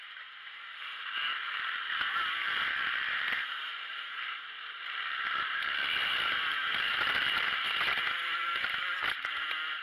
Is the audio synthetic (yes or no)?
yes